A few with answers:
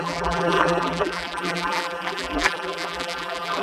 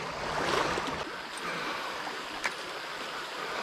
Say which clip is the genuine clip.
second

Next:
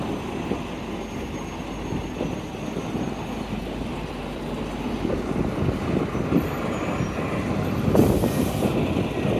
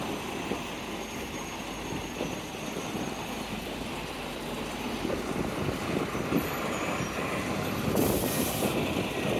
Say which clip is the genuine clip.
first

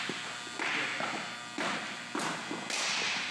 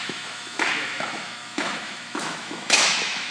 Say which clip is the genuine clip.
first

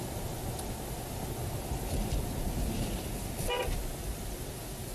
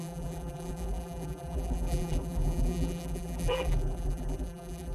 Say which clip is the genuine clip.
first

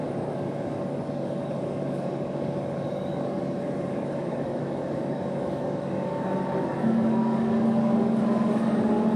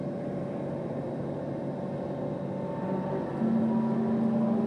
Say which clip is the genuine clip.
second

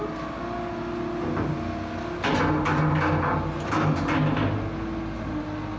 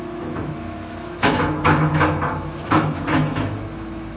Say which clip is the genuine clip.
first